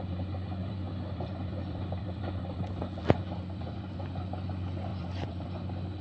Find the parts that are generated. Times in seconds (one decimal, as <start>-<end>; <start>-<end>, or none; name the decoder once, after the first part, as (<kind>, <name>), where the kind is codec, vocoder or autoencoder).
0.6-4.0 (vocoder, BigVGAN v2); 4.9-5.6